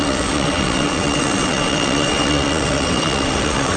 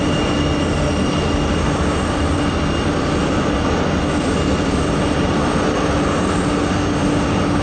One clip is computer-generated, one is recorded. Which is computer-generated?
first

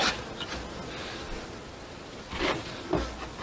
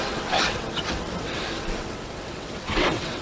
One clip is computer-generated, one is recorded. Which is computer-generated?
second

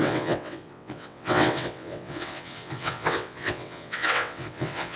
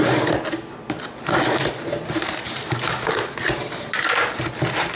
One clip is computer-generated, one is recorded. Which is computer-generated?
first